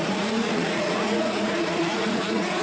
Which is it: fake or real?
fake